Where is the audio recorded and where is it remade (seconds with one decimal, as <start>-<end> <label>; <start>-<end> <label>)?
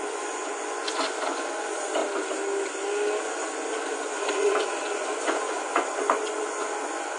0.0-2.0 remade; 2.0-3.2 recorded; 3.2-7.2 remade